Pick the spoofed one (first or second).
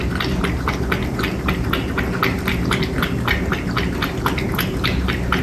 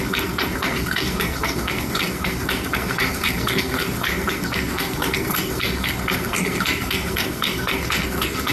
second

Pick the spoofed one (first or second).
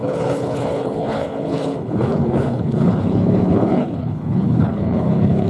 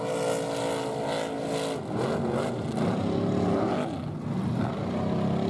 first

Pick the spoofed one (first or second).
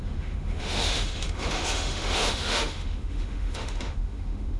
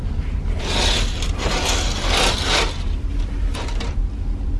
first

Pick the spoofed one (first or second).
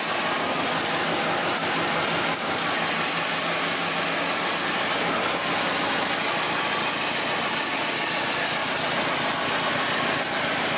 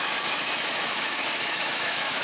second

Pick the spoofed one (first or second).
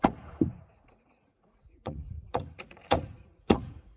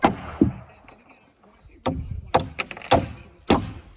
first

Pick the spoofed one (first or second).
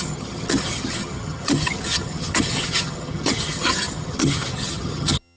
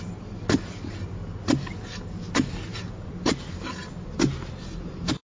first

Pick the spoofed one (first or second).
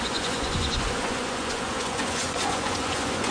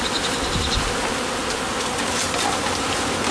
first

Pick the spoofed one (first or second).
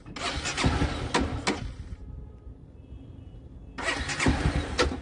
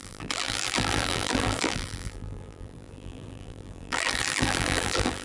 second